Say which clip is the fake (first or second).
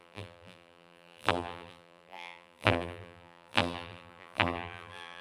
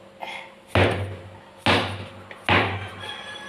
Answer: first